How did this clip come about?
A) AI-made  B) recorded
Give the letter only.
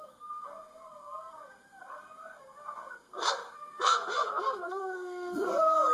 A